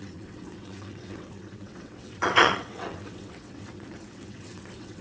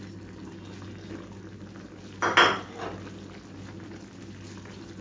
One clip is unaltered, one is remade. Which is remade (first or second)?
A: first